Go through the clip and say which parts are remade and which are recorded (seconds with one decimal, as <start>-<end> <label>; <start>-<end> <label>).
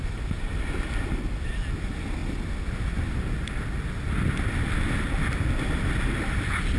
0.0-6.8 recorded